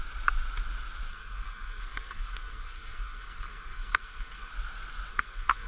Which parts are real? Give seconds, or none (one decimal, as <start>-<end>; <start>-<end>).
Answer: 0.0-1.1; 4.5-5.1